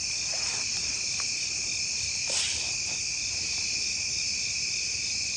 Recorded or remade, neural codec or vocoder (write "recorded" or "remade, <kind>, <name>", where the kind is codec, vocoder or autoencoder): recorded